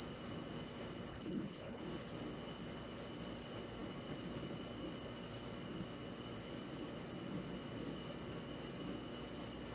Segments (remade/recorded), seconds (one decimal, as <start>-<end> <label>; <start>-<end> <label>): 0.0-1.1 recorded; 1.1-1.8 remade; 1.8-9.7 recorded